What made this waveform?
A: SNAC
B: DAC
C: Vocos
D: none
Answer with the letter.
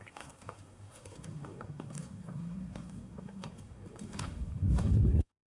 A